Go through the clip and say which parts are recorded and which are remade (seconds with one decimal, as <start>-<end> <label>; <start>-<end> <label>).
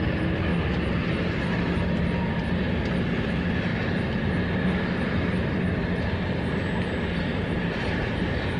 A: 0.0-7.3 recorded; 7.3-8.6 remade